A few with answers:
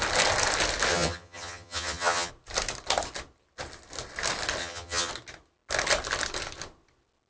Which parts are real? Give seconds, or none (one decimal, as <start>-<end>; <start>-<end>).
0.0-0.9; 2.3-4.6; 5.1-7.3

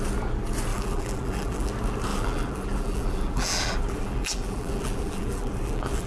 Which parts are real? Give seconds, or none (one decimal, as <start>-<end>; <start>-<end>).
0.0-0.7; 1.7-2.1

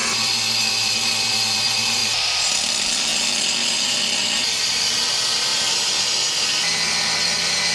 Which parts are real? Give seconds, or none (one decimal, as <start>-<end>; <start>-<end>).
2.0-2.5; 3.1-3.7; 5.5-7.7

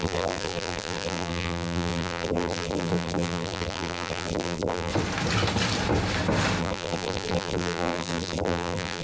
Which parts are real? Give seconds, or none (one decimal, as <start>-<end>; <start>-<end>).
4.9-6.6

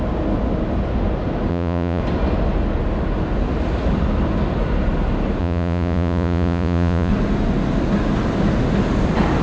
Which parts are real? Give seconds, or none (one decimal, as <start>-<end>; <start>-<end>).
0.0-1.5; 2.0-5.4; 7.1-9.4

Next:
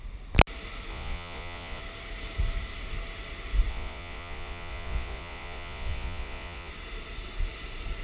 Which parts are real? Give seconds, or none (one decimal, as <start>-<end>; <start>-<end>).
0.0-0.9; 1.8-3.7; 6.7-8.0